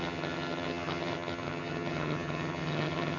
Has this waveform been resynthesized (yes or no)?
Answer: yes